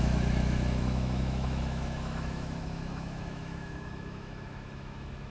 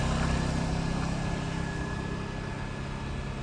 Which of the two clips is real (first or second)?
second